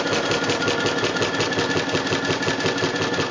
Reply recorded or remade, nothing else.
recorded